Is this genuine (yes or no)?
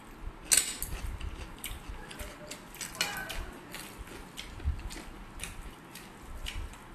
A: yes